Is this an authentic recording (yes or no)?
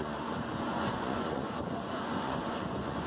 no